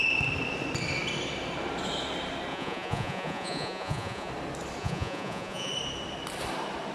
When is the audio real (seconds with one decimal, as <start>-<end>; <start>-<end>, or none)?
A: 0.0-2.5; 4.3-4.8; 5.7-6.9